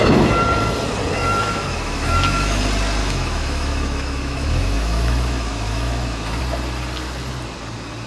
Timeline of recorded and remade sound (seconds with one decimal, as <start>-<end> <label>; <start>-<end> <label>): 0.0-1.2 recorded; 1.2-2.6 remade; 2.6-3.0 recorded; 3.0-6.4 remade; 6.4-8.1 recorded